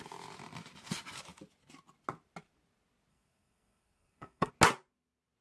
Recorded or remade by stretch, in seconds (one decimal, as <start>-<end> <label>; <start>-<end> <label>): 0.0-3.1 recorded; 3.1-4.5 remade; 4.5-5.4 recorded